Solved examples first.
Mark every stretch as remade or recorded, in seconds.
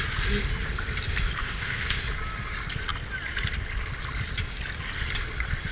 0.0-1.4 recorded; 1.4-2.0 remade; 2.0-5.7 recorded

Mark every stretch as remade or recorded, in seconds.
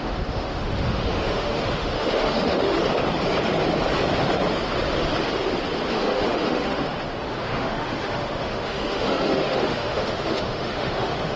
0.0-2.8 remade; 2.8-5.9 recorded; 5.9-11.4 remade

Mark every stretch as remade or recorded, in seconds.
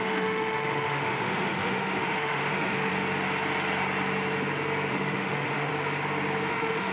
0.0-2.9 remade; 2.9-4.9 recorded; 4.9-5.7 remade; 5.7-6.5 recorded; 6.5-6.9 remade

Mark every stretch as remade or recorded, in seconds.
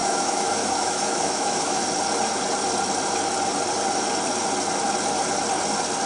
0.0-1.8 remade; 1.8-6.1 recorded